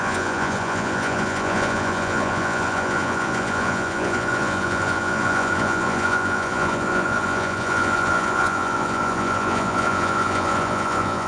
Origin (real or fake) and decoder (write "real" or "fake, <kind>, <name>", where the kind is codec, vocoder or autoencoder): fake, vocoder, Vocos